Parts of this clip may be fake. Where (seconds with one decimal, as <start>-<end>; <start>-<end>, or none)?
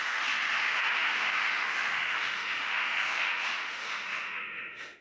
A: 0.0-5.0